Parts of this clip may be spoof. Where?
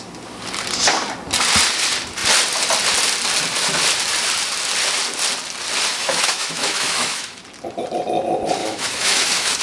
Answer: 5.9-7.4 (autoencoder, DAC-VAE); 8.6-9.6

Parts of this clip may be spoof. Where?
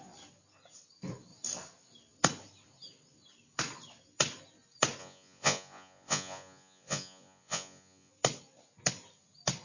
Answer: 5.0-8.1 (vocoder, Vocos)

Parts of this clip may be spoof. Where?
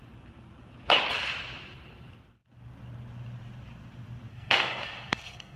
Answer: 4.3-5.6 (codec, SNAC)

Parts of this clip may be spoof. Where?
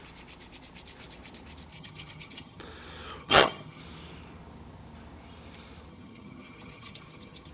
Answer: 1.7-2.6 (vocoder, HiFi-GAN); 3.2-3.8; 5.9-7.5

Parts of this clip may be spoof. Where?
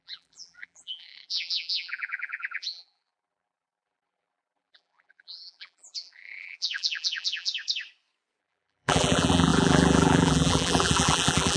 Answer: 0.0-7.5 (vocoder, BigVGAN v2); 8.4-11.6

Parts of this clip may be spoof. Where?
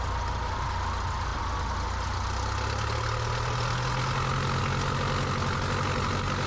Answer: none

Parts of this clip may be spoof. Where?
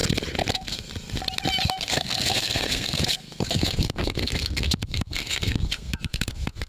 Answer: 0.5-0.9 (codec, SNAC); 1.7-6.7